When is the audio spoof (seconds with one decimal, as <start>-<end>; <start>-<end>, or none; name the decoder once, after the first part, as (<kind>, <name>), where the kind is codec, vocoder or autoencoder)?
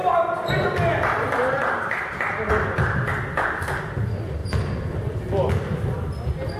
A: none